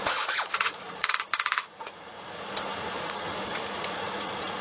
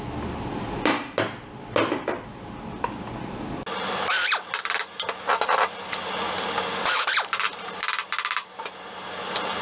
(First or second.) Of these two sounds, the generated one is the first